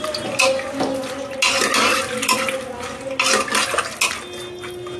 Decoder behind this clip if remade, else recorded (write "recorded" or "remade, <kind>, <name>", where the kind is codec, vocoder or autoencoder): recorded